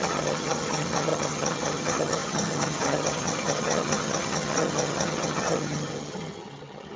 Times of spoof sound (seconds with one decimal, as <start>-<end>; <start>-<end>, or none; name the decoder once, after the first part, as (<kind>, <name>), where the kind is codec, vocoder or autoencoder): 0.0-7.0 (vocoder, HiFi-GAN)